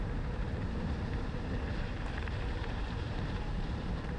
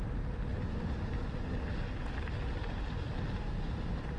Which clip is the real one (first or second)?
second